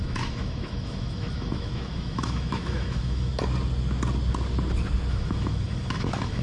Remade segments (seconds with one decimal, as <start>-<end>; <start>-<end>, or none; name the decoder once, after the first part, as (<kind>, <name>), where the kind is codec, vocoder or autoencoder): 0.0-3.3 (autoencoder, DAC-VAE); 5.1-6.4

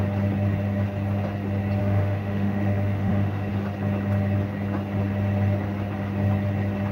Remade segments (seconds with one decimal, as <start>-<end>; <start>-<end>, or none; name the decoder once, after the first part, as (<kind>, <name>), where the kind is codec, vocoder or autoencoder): 1.8-3.5 (autoencoder, DAC-VAE)

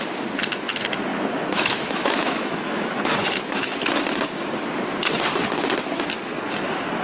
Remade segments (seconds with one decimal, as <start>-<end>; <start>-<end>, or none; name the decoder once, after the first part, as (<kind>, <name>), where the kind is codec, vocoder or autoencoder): 1.1-4.0 (autoencoder, DAC-VAE)

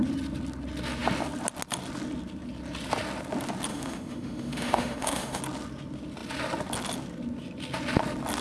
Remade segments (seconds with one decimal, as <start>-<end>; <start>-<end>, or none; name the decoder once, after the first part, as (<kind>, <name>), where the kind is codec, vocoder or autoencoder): 3.7-5.4 (autoencoder, DAC-VAE)

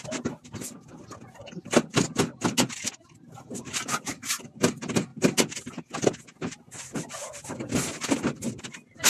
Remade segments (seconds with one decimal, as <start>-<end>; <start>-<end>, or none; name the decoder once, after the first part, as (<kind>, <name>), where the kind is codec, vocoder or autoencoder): none

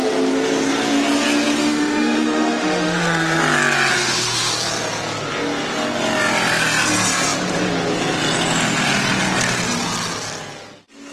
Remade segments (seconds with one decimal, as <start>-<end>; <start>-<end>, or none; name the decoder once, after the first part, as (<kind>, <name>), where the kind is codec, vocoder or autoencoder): 1.6-3.4 (autoencoder, DAC-VAE); 3.9-4.5

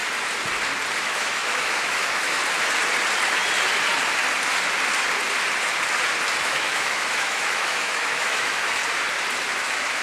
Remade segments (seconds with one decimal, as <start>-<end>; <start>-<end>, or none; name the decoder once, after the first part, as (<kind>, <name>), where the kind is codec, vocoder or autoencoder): 1.0-2.4 (autoencoder, DAC-VAE); 6.4-8.8; 9.5-10.0

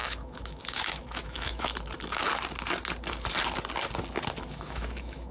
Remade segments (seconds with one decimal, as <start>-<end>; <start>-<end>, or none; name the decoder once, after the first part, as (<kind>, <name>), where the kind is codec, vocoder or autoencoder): 0.0-1.7 (autoencoder, DAC-VAE); 4.5-5.3